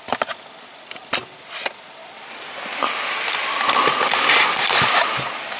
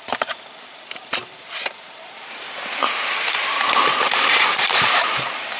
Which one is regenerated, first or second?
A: second